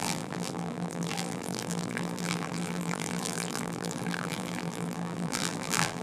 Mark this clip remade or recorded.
remade